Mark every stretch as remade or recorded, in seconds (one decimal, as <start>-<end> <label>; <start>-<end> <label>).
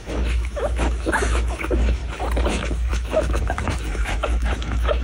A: 0.0-2.0 remade; 2.0-2.5 recorded; 2.5-5.0 remade